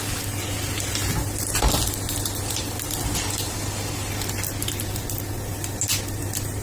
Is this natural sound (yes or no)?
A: yes